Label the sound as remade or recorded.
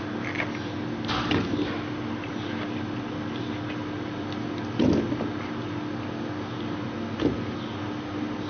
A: recorded